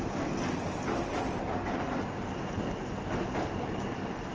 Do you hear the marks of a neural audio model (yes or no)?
no